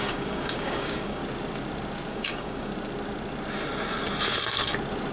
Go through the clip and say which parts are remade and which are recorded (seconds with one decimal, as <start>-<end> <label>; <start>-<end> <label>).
0.0-1.2 remade; 1.2-2.1 recorded; 2.1-2.7 remade; 2.7-5.1 recorded